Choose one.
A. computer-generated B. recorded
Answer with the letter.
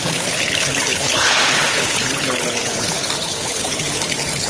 A